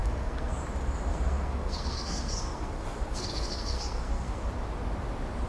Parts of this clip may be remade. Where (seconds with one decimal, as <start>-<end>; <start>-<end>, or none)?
0.0-0.6; 1.1-4.4

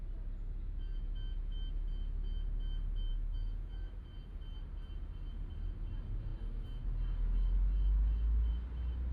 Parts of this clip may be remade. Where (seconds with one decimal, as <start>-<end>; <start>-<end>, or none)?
3.1-4.0

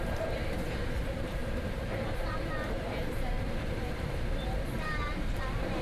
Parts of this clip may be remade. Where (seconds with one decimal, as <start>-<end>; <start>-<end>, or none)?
0.0-5.8

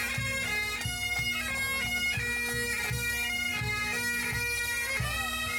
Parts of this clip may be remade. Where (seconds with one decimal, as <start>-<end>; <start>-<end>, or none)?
none